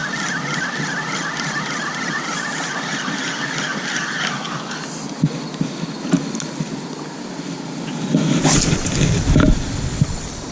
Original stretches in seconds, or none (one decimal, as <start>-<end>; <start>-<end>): 0.0-10.5